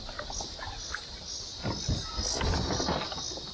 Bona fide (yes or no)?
yes